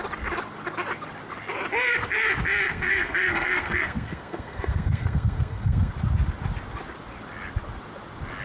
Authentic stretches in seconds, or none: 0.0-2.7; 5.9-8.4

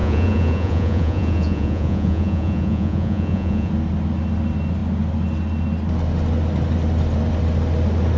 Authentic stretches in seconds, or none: 3.7-8.2

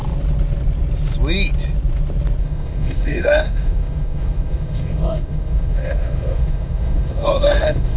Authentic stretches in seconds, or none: 0.0-2.4